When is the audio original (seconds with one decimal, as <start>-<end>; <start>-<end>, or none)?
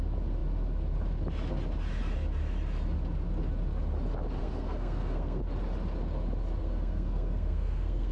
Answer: 0.0-4.4; 5.4-6.6